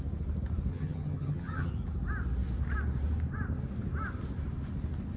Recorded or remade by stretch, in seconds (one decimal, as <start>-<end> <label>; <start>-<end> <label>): 0.0-0.7 recorded; 0.7-1.7 remade; 1.7-5.2 recorded